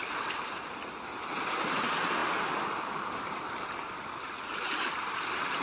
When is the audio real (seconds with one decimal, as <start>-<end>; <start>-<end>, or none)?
0.0-5.6

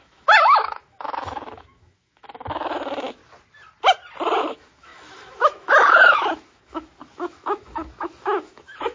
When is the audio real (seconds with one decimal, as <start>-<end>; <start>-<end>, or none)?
3.2-4.4